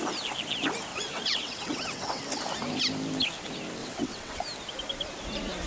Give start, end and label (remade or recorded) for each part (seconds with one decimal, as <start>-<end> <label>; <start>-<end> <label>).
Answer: 0.0-0.9 recorded; 0.9-2.2 remade; 2.2-3.8 recorded; 3.8-4.4 remade; 4.4-5.7 recorded